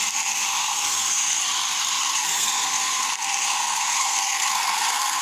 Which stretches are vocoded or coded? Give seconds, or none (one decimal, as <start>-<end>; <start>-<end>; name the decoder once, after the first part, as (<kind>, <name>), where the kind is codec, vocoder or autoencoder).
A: 0.6-1.4 (codec, SNAC); 2.0-5.2